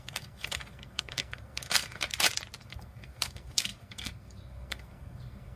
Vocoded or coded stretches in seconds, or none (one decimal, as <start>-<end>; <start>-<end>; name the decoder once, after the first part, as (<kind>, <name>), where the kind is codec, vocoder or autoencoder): 0.0-2.1 (codec, SNAC); 2.6-5.6